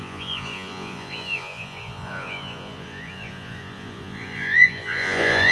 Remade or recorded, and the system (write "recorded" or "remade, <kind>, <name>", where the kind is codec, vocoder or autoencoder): remade, vocoder, Vocos